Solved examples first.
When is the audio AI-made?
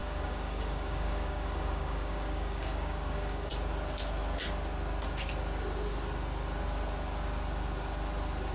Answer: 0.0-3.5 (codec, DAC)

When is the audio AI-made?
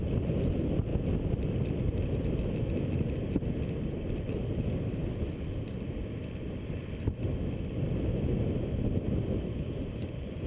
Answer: 0.9-1.5 (vocoder, BigVGAN v2)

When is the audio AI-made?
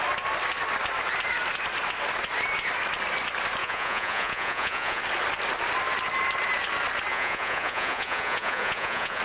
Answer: 3.6-5.0 (vocoder, Vocos); 7.1-9.2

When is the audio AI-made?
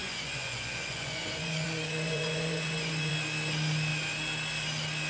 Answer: 0.0-3.1 (vocoder, Vocos)